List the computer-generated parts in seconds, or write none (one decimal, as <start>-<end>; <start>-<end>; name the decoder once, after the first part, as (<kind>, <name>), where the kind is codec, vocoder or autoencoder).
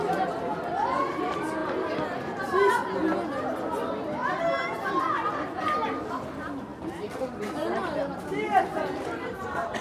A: 0.0-1.6 (vocoder, BigVGAN v2); 5.3-6.7; 8.6-9.8